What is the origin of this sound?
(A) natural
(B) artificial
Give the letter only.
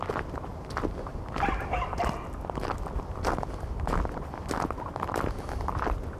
A